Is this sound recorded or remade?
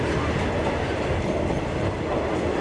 recorded